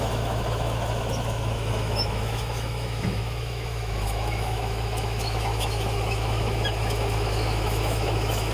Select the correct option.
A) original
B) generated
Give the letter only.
B